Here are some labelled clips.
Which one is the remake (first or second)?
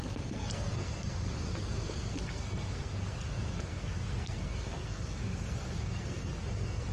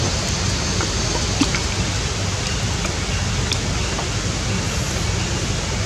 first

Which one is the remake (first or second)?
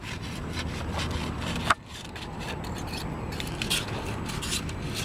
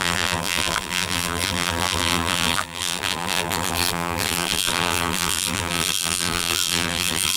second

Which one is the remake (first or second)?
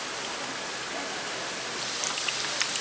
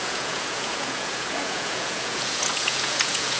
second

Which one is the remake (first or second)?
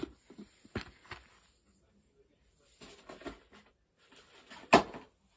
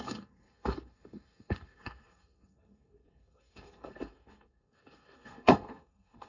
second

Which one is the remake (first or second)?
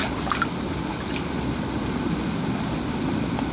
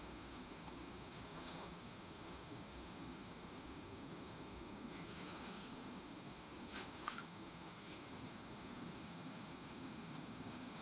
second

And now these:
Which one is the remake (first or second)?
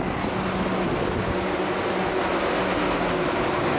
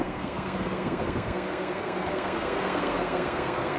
second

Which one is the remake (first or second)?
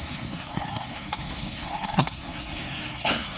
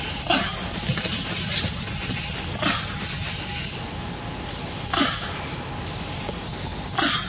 first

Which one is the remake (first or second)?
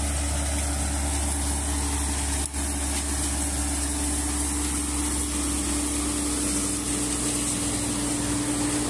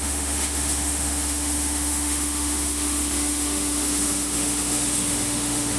second